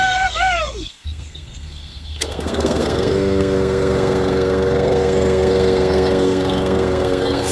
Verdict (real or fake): fake